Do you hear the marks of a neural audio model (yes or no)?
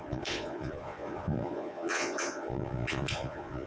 yes